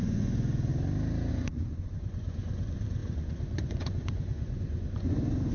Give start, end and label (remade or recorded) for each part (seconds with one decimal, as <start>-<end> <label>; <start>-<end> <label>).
0.0-0.7 remade; 0.7-1.3 recorded; 1.3-5.5 remade